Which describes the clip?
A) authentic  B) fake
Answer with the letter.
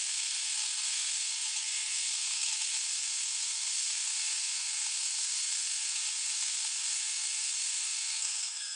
B